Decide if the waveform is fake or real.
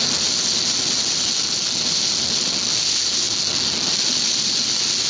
real